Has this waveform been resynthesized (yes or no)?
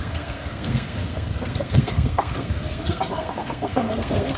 yes